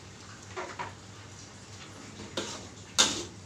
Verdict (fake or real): real